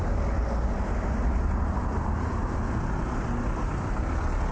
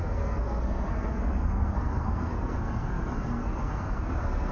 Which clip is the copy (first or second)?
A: second